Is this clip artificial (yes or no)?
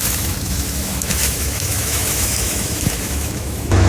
yes